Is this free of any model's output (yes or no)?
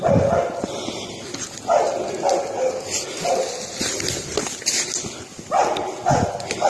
yes